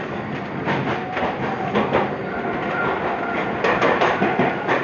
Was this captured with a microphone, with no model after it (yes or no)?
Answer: yes